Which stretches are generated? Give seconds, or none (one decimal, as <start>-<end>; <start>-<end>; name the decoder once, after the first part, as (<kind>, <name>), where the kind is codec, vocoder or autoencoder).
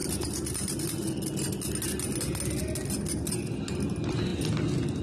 none